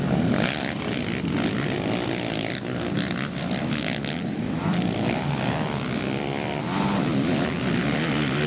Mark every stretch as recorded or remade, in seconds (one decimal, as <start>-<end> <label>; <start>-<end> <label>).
0.0-8.5 recorded

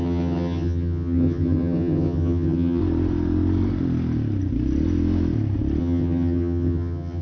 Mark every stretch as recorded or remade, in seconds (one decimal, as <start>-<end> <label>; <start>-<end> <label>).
0.0-2.8 remade; 2.8-5.8 recorded; 5.8-7.2 remade

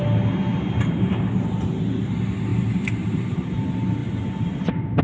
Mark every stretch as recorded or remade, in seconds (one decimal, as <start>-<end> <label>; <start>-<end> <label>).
0.0-0.5 recorded; 0.5-1.3 remade; 1.3-2.5 recorded; 2.5-3.6 remade; 3.6-5.0 recorded